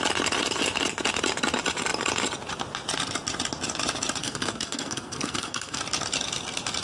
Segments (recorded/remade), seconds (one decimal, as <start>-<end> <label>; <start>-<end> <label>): 0.0-4.2 recorded; 4.2-5.8 remade; 5.8-6.8 recorded